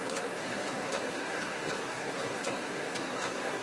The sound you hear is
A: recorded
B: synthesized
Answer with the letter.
B